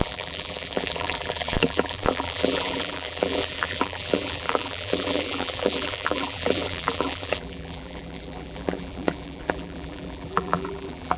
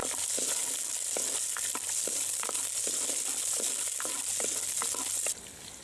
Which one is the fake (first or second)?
first